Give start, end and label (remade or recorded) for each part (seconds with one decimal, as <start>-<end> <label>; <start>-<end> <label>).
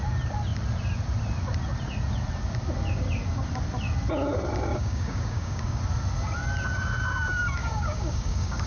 0.0-4.7 recorded; 4.7-5.8 remade; 5.8-7.6 recorded; 7.6-8.7 remade